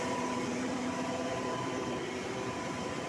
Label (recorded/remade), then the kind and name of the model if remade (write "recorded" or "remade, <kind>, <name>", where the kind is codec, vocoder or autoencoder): remade, vocoder, BigVGAN v2